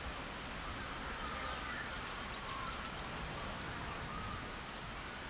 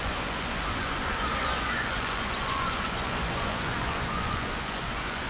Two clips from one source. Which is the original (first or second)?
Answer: first